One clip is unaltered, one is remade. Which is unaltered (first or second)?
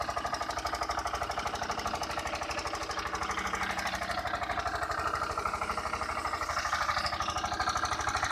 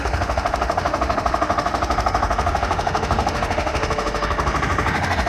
first